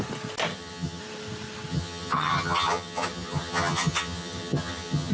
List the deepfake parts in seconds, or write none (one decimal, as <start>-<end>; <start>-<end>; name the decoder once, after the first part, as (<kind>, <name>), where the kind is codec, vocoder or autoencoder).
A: 0.5-1.0 (vocoder, HiFi-GAN); 1.7-5.1